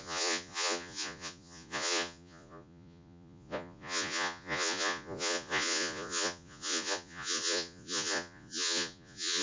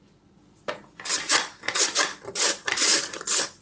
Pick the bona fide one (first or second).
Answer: second